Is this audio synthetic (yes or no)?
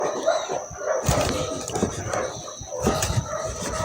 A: yes